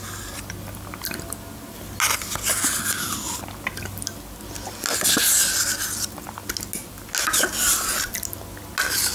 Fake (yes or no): no